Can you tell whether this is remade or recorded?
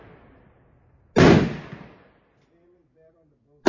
recorded